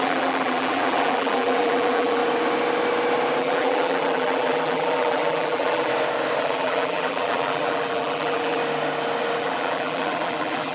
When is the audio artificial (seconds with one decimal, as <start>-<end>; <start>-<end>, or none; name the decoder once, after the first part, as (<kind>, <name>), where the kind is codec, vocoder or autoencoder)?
0.0-2.2 (vocoder, BigVGAN v2); 3.4-5.9; 6.4-8.6; 9.4-10.7

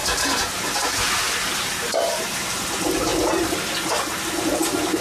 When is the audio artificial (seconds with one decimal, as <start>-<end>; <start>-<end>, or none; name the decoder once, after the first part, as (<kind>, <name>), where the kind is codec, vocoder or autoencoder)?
0.0-3.1 (vocoder, BigVGAN v2)